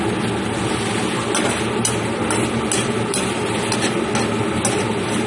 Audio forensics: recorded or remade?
recorded